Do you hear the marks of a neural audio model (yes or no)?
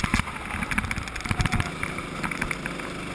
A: no